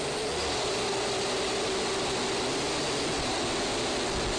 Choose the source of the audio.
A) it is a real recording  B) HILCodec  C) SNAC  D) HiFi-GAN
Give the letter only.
A